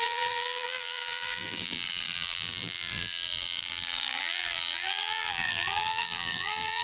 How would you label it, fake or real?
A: fake